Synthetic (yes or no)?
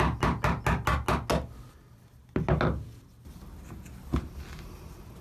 no